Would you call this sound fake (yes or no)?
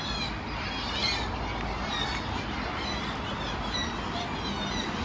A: no